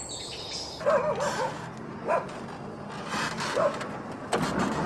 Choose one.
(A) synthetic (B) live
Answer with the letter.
B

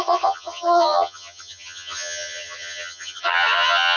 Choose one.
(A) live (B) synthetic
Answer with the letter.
B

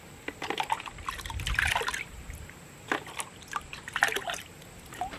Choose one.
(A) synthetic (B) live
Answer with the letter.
B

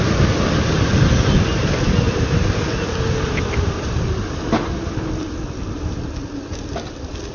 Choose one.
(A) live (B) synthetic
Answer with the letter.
A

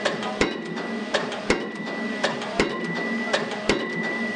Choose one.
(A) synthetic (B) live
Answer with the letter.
A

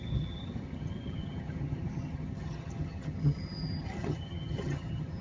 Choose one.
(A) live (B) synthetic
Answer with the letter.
B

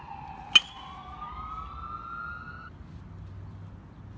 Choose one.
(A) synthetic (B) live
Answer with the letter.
B